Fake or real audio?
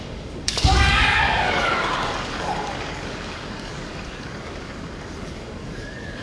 fake